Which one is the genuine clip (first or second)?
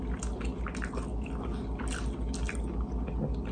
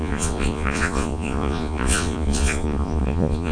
first